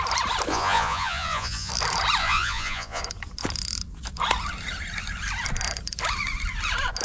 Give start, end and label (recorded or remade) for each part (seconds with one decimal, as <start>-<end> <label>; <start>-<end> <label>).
0.0-0.5 recorded; 0.5-1.7 remade; 1.7-2.2 recorded; 2.2-3.0 remade; 3.0-7.0 recorded